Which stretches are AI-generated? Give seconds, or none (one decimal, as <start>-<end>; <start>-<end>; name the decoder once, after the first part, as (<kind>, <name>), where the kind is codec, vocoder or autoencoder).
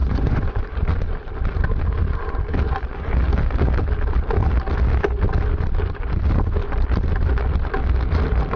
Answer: 0.0-0.6 (vocoder, Vocos)